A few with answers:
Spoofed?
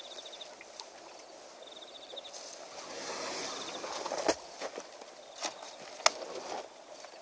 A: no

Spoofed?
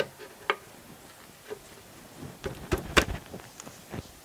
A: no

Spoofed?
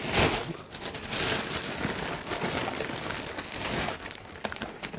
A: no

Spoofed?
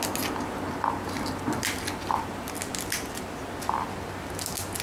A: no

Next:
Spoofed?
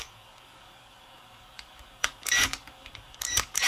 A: yes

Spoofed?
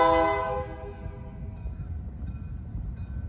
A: no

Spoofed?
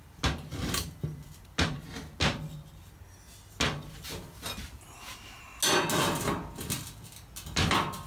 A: no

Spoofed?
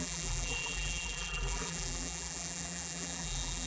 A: yes